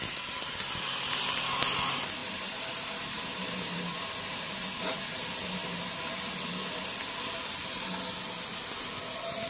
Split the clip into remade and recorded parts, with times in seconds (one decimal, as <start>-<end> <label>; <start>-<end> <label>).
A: 0.0-2.2 recorded; 2.2-4.1 remade; 4.1-9.5 recorded